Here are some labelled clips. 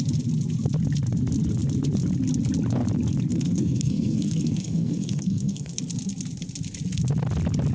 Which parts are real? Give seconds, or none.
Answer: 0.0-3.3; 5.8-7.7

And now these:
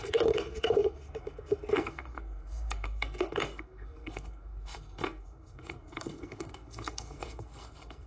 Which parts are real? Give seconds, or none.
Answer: none